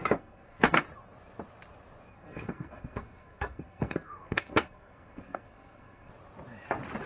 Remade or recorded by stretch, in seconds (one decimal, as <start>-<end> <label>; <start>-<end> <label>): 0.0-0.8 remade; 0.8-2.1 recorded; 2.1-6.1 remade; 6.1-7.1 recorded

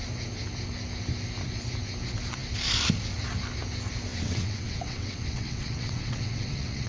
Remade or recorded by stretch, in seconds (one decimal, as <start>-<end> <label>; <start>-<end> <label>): 0.0-4.1 recorded; 4.1-6.9 remade

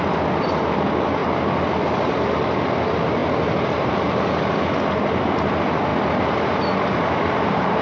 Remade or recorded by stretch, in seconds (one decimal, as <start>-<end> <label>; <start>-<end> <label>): 0.0-7.8 recorded

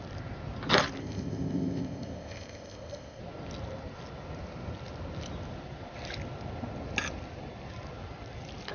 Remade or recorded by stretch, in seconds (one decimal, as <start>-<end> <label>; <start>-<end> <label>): 0.0-1.0 recorded; 1.0-3.2 remade; 3.2-8.7 recorded

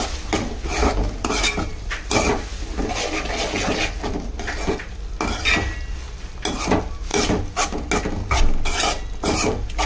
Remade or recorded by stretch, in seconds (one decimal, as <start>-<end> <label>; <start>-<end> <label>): 0.0-9.9 recorded

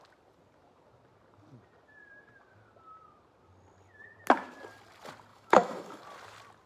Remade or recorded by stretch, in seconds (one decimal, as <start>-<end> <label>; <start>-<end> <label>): 0.0-5.3 recorded; 5.3-6.0 remade; 6.0-6.7 recorded